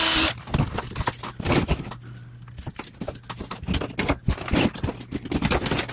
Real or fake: real